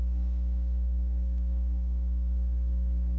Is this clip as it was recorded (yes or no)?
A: no